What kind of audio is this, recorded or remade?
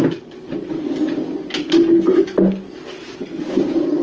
recorded